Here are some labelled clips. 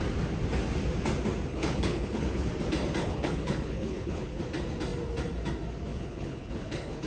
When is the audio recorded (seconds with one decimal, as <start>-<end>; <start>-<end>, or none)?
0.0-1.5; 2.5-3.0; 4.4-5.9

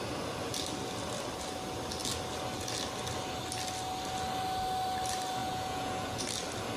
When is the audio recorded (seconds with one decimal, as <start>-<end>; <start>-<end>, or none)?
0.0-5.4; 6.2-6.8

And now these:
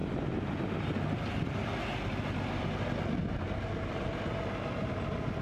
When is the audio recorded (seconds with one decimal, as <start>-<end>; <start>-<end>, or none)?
0.0-5.4